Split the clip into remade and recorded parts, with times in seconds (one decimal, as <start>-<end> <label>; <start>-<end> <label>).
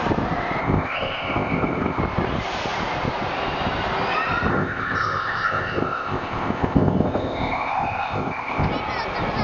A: 0.0-0.6 recorded; 0.6-2.0 remade; 2.0-4.5 recorded; 4.5-8.7 remade; 8.7-9.4 recorded